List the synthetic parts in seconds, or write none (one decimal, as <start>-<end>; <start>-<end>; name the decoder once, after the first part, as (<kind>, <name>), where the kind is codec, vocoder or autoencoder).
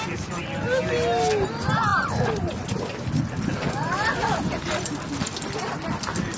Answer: none